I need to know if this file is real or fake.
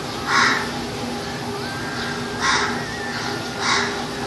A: real